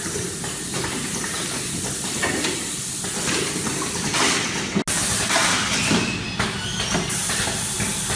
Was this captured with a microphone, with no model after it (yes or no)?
yes